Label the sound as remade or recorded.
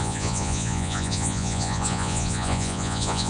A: remade